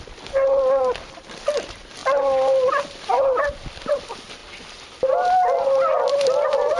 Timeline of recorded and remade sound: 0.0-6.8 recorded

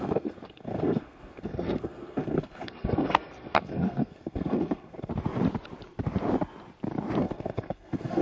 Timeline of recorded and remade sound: 0.0-5.1 remade; 5.1-7.2 recorded; 7.2-8.2 remade

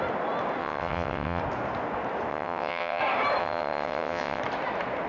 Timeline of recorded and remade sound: 0.0-0.6 recorded; 0.6-1.4 remade; 1.4-2.3 recorded; 2.3-3.0 remade; 3.0-3.4 recorded; 3.4-4.4 remade; 4.4-5.1 recorded

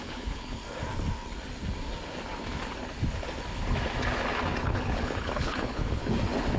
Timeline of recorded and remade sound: 0.0-0.6 remade; 0.6-4.6 recorded; 4.6-6.0 remade; 6.0-6.6 recorded

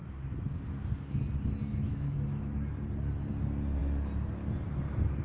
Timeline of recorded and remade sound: 0.0-0.6 remade; 0.6-1.7 recorded; 1.7-2.4 remade; 2.4-5.2 recorded

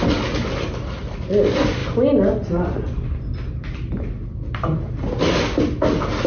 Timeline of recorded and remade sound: 0.0-6.3 recorded